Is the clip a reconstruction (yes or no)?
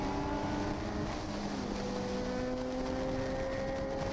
no